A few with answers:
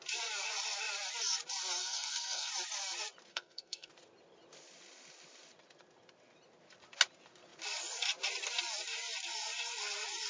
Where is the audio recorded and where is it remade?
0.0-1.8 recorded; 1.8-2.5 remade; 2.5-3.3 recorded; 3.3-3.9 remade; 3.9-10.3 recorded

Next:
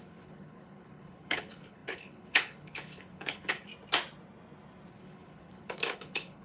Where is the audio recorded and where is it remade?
0.0-3.7 remade; 3.7-4.9 recorded; 4.9-6.4 remade

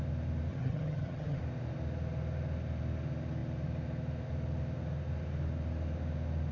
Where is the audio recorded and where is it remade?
0.0-0.5 recorded; 0.5-1.4 remade; 1.4-6.5 recorded

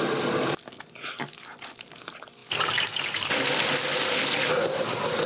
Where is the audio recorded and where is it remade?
0.0-5.3 recorded

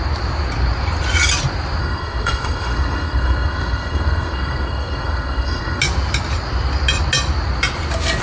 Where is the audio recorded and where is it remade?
0.0-1.8 recorded; 1.8-5.8 remade; 5.8-8.2 recorded

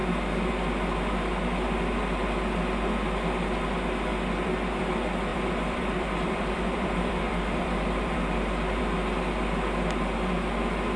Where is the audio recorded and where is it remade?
0.0-4.1 recorded; 4.1-4.8 remade; 4.8-5.3 recorded; 5.3-8.8 remade; 8.8-11.0 recorded